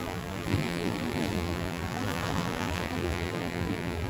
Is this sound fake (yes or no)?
yes